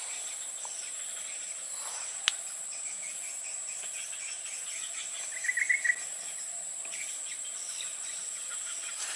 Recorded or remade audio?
recorded